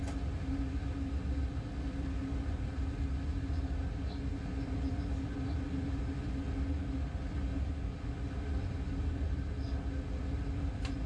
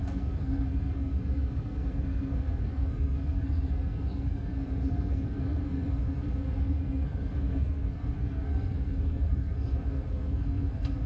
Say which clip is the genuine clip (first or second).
first